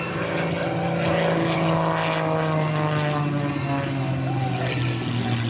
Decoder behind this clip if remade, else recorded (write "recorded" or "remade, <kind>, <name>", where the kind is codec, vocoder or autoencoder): recorded